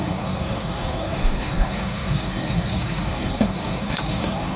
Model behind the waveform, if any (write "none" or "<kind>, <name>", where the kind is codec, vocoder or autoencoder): codec, SNAC